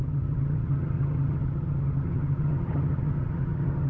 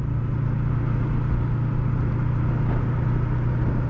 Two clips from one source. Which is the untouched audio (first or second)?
second